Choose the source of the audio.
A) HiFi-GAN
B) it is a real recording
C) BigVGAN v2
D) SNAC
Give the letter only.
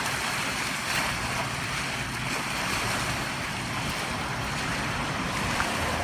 B